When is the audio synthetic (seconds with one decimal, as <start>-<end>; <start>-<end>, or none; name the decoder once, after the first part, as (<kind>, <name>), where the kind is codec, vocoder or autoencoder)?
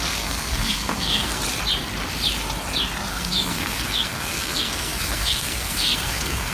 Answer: 0.0-1.4 (codec, SNAC); 3.1-6.5